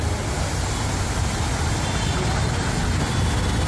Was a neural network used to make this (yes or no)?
no